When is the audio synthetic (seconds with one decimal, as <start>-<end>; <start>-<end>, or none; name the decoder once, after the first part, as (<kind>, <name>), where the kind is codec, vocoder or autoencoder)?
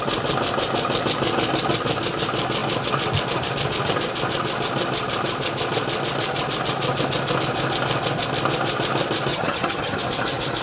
9.3-10.0 (vocoder, HiFi-GAN)